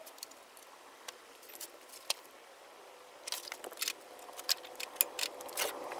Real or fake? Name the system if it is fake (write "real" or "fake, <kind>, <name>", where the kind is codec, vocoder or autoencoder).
real